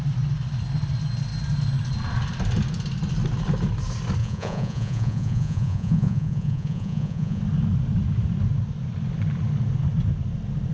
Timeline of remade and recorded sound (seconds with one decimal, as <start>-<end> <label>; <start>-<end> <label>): 0.0-4.2 recorded; 4.2-7.4 remade; 7.4-10.7 recorded